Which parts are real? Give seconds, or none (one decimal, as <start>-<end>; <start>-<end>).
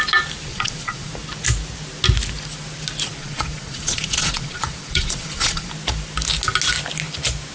0.0-0.5; 1.1-3.2; 5.7-7.5